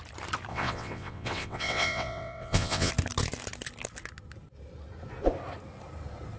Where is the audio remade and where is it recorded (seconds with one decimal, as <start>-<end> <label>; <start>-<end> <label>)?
0.0-0.5 recorded; 0.5-2.9 remade; 2.9-6.4 recorded